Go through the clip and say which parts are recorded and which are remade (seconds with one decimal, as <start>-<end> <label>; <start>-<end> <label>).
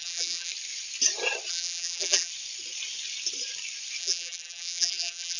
0.0-0.5 remade; 0.5-1.5 recorded; 1.5-2.3 remade; 2.3-4.0 recorded; 4.0-5.4 remade